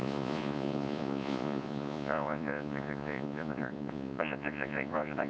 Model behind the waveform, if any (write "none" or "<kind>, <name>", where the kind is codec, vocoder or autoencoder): vocoder, Vocos